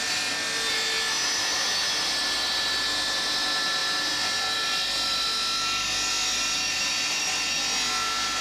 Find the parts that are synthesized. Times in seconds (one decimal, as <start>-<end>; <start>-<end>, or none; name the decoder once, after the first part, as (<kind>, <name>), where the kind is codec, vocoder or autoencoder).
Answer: none